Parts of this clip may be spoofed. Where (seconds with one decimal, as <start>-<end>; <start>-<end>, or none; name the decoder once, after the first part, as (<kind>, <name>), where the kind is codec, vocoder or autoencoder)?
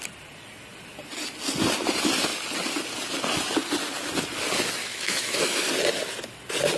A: 4.8-5.7 (autoencoder, DAC-VAE)